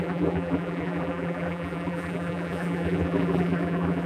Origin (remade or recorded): remade